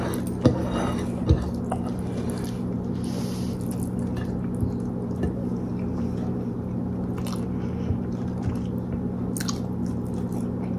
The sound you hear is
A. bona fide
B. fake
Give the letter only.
A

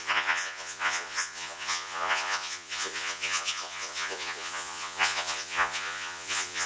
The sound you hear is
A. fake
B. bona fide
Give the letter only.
A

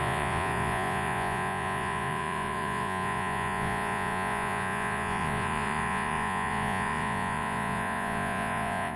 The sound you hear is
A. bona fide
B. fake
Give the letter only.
B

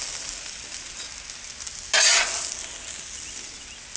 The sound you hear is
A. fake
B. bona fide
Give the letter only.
B